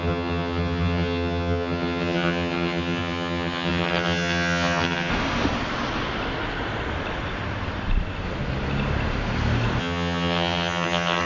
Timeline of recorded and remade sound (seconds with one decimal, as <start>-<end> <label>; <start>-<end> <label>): 0.0-5.1 remade; 5.1-9.8 recorded; 9.8-11.3 remade